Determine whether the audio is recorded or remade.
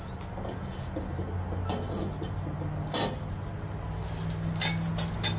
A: recorded